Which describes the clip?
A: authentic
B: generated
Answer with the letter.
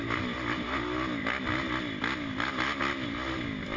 A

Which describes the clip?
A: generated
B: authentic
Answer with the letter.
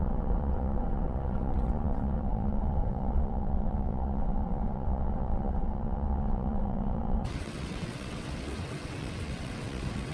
A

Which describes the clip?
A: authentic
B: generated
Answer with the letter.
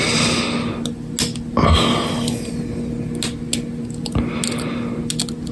A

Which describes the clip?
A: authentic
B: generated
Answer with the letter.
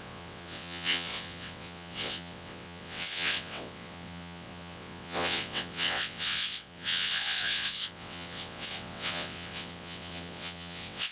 B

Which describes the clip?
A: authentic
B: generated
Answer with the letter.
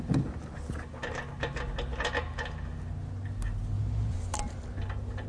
A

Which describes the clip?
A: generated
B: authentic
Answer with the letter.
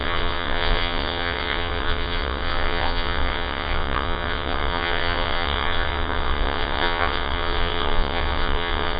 A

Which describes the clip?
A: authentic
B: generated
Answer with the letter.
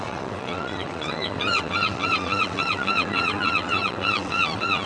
B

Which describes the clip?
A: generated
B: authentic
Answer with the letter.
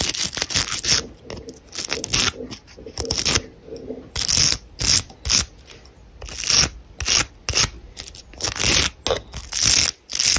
B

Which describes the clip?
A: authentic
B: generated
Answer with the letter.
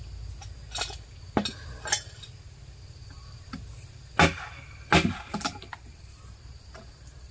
A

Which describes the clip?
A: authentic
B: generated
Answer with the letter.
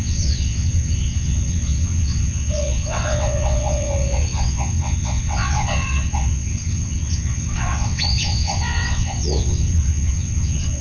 B